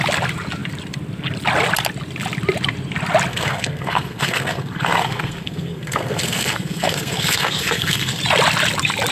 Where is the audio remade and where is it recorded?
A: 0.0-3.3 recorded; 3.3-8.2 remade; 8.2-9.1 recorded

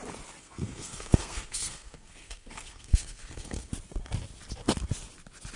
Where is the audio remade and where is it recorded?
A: 0.0-0.4 recorded; 0.4-3.7 remade; 3.7-5.6 recorded

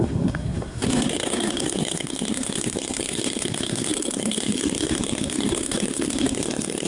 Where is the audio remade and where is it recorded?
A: 0.0-6.9 remade

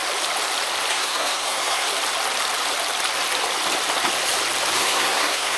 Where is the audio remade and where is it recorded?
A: 0.0-0.9 recorded; 0.9-1.9 remade; 1.9-4.8 recorded; 4.8-5.6 remade

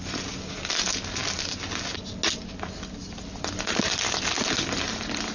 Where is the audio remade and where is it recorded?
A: 0.0-5.3 recorded

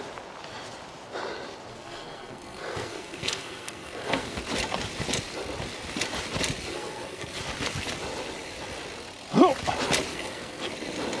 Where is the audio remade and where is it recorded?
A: 0.0-1.7 recorded; 1.7-4.4 remade; 4.4-6.7 recorded; 6.7-7.4 remade; 7.4-10.1 recorded; 10.1-10.7 remade; 10.7-11.2 recorded

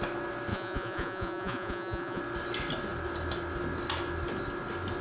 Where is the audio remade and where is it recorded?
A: 0.0-0.5 recorded; 0.5-2.2 remade; 2.2-5.0 recorded